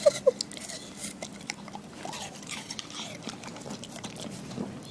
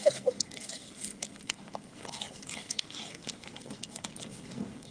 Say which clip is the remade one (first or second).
second